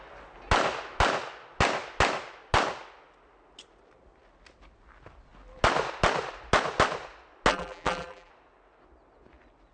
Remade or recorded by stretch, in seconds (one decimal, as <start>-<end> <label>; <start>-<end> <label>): 0.0-7.5 recorded; 7.5-8.3 remade; 8.3-9.7 recorded